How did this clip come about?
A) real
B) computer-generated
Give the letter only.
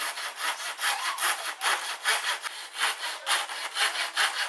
A